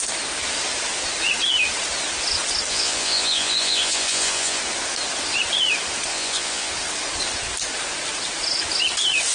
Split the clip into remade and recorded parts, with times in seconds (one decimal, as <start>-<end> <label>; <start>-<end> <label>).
0.0-2.7 recorded; 2.7-4.6 remade; 4.6-6.1 recorded; 6.1-6.7 remade; 6.7-9.3 recorded